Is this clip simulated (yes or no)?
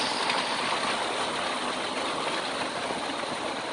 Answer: no